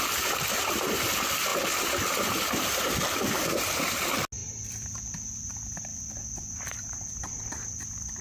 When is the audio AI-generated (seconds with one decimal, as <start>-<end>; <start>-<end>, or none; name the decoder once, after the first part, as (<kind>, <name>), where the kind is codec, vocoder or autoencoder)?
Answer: 1.5-3.8 (vocoder, BigVGAN v2); 4.4-5.0; 5.9-6.9